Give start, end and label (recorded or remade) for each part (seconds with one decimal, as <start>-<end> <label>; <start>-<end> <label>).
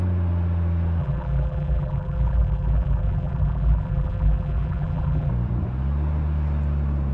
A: 0.0-1.0 recorded; 1.0-5.3 remade; 5.3-7.1 recorded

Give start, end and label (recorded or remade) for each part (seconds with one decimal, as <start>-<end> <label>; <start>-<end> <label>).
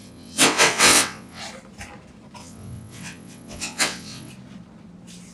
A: 0.0-1.4 remade; 1.4-2.4 recorded; 2.4-4.3 remade; 4.3-5.3 recorded